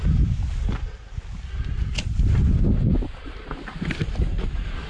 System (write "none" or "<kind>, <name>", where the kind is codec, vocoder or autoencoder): none